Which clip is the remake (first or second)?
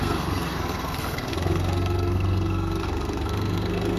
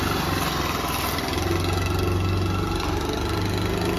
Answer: first